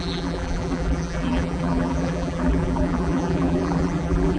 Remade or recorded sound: remade